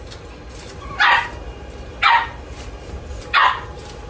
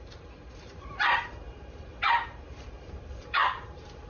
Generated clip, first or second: second